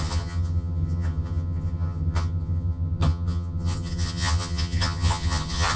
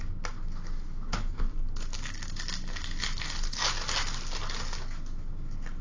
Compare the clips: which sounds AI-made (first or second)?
first